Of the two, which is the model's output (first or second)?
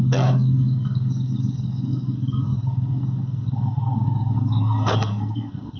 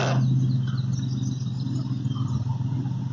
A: first